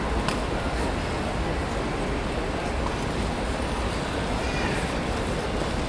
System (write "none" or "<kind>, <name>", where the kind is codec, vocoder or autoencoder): none